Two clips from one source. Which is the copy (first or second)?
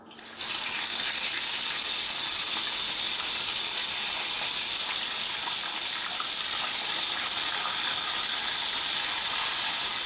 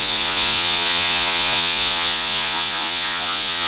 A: second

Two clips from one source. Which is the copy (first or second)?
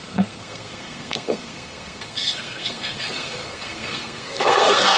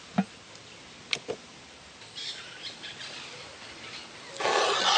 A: first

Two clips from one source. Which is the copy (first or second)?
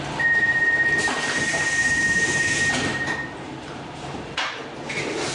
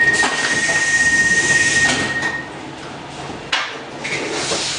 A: first